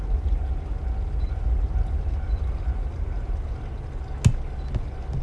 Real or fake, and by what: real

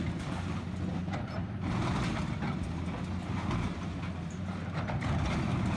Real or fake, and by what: real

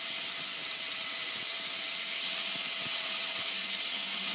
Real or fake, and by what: fake, vocoder, WaveNeXt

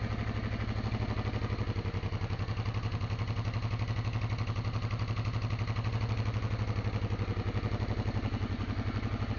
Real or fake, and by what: real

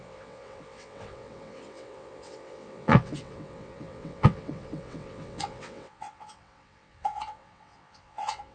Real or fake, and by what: fake, vocoder, WaveNeXt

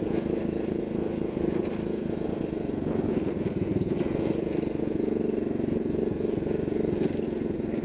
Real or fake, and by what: real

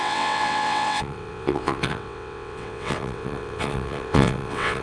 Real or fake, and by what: fake, vocoder, WaveNeXt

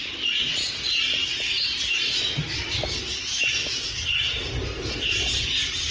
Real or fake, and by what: real